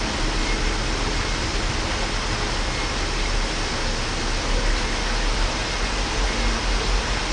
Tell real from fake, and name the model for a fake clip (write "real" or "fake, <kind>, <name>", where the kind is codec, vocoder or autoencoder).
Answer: real